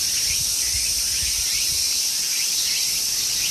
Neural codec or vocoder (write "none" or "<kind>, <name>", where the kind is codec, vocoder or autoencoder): none